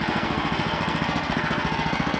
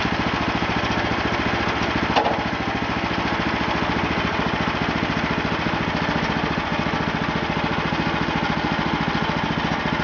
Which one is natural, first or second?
second